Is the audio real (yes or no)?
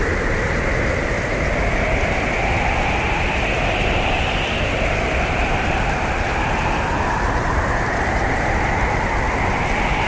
yes